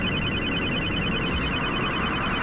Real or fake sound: real